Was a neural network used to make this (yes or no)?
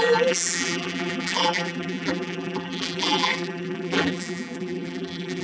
yes